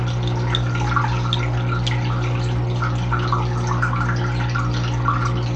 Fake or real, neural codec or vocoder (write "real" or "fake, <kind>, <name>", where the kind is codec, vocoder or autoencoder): real